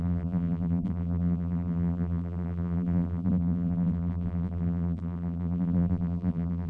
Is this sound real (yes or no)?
no